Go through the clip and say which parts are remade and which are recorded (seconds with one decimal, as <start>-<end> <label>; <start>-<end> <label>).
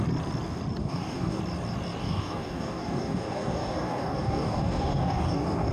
0.0-0.8 recorded; 0.8-1.4 remade; 1.4-2.0 recorded; 2.0-5.7 remade